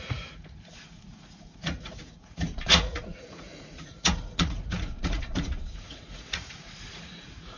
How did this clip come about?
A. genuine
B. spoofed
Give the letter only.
B